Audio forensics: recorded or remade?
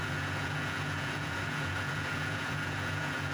remade